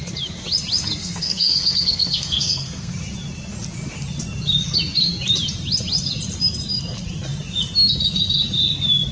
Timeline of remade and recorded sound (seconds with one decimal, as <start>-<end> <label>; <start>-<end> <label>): 0.0-1.0 recorded; 1.0-2.9 remade; 2.9-9.1 recorded